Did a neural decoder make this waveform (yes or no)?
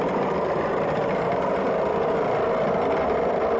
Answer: no